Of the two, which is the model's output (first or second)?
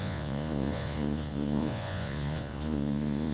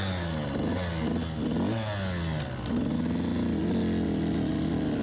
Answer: first